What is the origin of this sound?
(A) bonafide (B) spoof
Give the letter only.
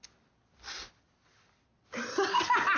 A